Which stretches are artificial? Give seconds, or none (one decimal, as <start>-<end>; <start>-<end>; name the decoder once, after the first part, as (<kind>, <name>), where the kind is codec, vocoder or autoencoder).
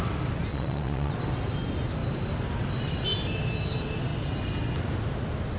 0.5-1.1 (vocoder, Vocos)